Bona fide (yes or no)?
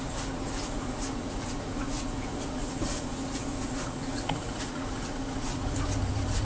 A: no